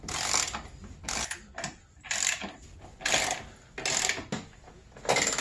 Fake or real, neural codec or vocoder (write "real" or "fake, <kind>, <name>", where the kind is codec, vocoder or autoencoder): real